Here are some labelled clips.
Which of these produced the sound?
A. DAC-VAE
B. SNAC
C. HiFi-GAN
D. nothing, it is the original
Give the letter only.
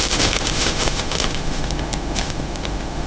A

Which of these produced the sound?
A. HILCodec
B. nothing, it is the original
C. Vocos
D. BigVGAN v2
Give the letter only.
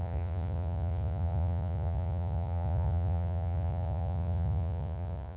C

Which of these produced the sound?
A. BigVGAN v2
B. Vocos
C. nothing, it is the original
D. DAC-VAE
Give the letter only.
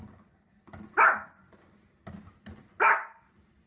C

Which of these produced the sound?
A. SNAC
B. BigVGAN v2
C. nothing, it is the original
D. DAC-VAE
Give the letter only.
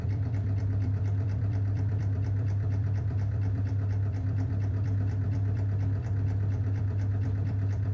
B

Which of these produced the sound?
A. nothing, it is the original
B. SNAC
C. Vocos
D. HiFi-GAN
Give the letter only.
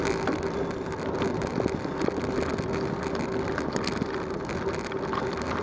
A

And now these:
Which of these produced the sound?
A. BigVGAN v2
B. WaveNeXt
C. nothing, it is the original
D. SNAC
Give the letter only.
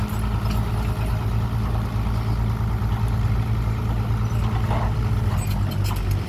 C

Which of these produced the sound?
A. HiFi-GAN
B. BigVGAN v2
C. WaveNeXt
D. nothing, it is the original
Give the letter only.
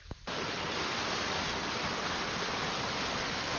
D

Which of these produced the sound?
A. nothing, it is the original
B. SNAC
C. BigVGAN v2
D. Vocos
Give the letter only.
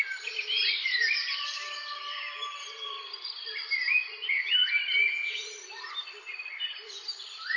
C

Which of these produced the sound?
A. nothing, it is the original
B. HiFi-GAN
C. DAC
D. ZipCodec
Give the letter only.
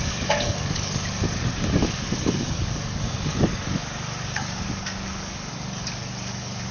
C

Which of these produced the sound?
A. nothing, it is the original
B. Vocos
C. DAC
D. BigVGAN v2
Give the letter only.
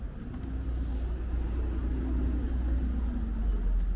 A